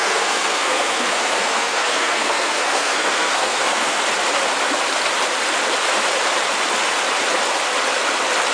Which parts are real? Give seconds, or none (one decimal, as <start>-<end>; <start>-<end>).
4.0-8.5